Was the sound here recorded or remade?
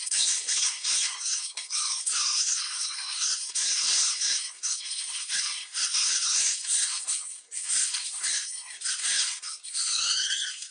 remade